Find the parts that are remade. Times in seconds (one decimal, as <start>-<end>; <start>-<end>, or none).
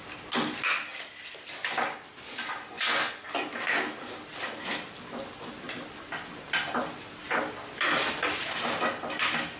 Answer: none